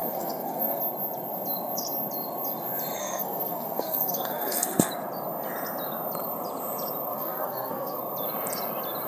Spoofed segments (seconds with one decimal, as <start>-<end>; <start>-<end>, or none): 0.0-0.8; 3.0-4.9; 7.1-8.0